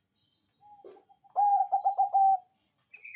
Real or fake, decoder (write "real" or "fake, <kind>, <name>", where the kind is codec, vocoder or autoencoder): real